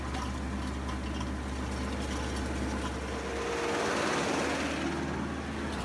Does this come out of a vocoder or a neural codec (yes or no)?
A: no